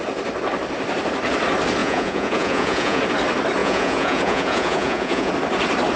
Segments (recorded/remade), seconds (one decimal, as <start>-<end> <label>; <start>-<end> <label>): 0.0-1.8 recorded; 1.8-3.0 remade; 3.0-3.6 recorded; 3.6-5.3 remade; 5.3-6.0 recorded